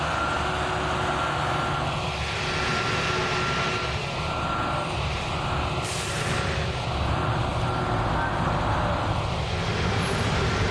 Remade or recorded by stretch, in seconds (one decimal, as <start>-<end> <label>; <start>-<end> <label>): 0.0-10.7 recorded